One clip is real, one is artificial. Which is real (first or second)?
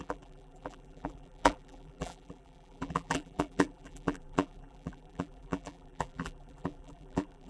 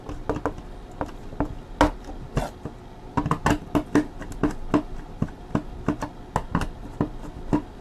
second